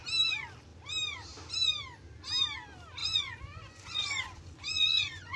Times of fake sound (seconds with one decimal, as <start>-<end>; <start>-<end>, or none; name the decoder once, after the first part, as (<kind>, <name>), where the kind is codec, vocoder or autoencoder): 3.0-5.4 (vocoder, Vocos)